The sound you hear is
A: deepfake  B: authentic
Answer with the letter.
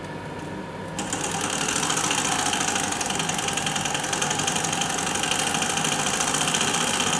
B